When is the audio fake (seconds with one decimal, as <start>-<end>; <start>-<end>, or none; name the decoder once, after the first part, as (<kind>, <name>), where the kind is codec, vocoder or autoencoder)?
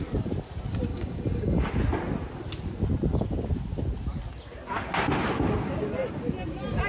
0.9-1.7 (codec, DAC)